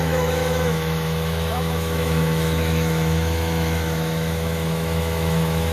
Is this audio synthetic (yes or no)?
yes